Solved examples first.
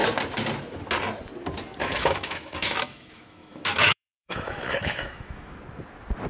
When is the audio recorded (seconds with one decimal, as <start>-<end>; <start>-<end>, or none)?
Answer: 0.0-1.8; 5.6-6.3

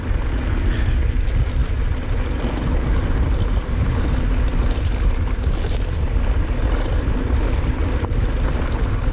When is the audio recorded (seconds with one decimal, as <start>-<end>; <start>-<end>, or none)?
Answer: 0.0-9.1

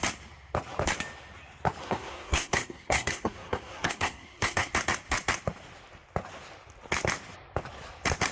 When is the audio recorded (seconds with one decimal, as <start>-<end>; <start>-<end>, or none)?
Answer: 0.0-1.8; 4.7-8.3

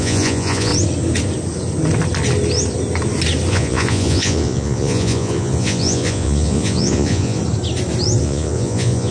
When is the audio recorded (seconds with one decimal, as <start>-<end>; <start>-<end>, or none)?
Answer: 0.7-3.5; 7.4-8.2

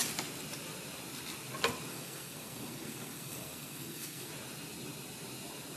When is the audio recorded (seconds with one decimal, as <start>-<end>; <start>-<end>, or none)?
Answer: 0.0-1.9; 4.3-5.8

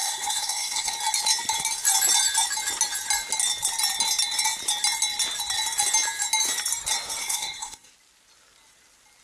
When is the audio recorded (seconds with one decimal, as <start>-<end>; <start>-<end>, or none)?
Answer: 0.9-7.2; 7.9-9.2